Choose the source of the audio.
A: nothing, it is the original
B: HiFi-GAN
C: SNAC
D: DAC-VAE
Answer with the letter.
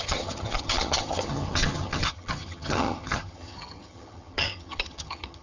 B